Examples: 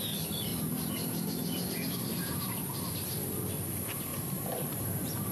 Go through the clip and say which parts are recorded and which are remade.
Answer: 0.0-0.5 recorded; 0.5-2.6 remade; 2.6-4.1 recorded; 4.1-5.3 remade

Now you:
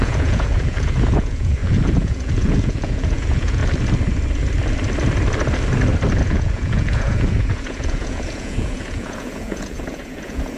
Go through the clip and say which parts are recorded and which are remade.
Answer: 0.0-3.6 remade; 3.6-6.2 recorded; 6.2-10.6 remade

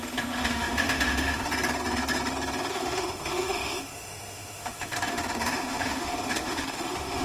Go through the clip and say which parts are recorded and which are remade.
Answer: 0.0-1.5 remade; 1.5-2.7 recorded; 2.7-7.2 remade

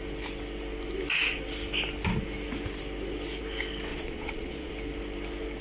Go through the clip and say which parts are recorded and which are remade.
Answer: 0.0-3.9 recorded; 3.9-4.7 remade; 4.7-5.6 recorded

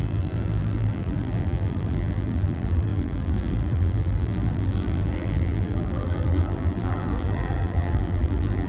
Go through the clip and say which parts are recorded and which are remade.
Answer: 0.0-8.7 remade